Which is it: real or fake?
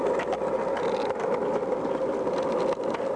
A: real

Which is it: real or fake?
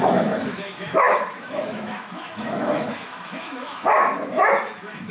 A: fake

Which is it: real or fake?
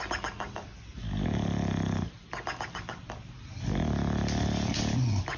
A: real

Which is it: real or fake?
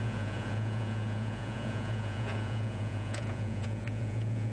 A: fake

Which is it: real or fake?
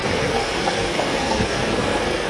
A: fake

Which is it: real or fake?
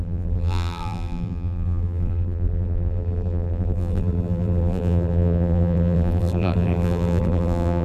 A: fake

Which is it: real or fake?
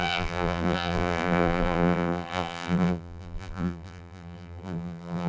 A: fake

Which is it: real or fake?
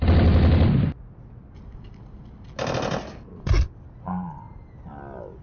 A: real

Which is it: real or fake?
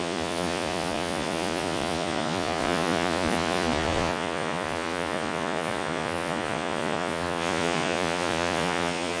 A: fake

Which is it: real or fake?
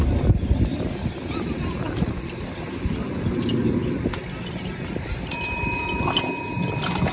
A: real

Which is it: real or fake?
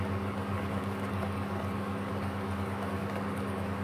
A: fake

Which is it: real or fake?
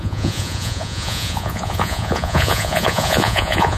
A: fake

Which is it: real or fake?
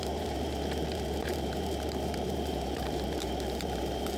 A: fake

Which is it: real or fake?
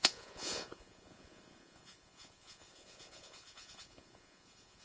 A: fake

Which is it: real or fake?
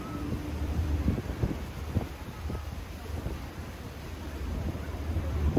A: fake